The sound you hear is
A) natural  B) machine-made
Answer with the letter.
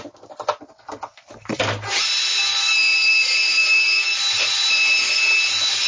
A